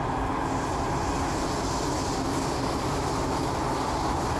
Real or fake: real